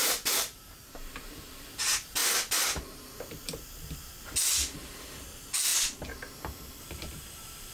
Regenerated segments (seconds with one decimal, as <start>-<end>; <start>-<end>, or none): 0.0-2.2; 2.8-4.1; 4.7-5.7; 6.8-7.7